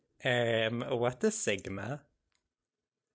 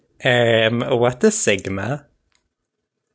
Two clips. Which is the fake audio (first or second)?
first